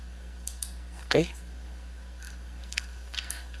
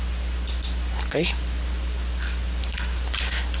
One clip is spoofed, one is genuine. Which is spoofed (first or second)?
first